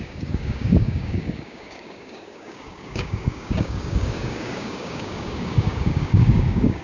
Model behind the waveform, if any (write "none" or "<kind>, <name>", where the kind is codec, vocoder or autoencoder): codec, DAC